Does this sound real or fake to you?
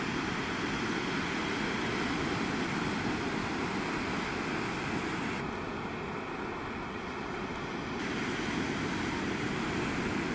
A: real